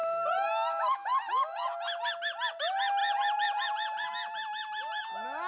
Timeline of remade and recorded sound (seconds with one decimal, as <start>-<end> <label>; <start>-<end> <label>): 0.0-3.0 recorded; 3.0-4.1 remade; 4.1-5.5 recorded